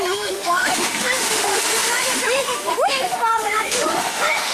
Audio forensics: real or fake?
fake